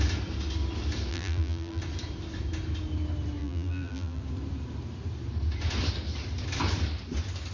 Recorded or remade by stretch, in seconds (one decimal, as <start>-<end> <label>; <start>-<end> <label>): 0.0-1.1 recorded; 1.1-1.8 remade; 1.8-3.4 recorded; 3.4-4.2 remade; 4.2-7.5 recorded